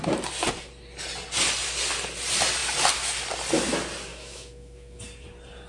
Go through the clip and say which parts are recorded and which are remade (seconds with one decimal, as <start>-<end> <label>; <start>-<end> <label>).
0.0-4.1 recorded; 4.1-5.0 remade; 5.0-5.7 recorded